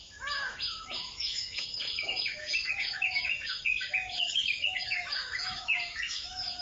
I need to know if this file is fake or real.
fake